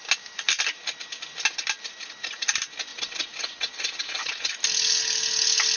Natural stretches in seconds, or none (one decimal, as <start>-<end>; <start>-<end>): 0.0-2.9; 4.5-5.8